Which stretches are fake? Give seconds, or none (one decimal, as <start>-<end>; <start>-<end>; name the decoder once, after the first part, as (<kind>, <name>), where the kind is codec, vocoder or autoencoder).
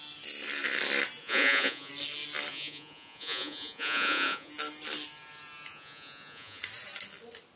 1.2-1.9 (vocoder, Vocos); 2.5-4.5; 5.7-6.6